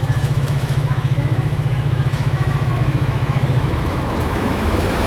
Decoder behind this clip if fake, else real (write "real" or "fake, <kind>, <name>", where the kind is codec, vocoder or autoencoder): fake, autoencoder, DAC-VAE